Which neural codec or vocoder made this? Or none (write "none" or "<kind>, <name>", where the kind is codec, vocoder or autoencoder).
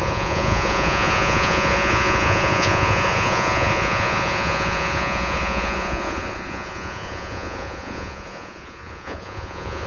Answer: vocoder, Vocos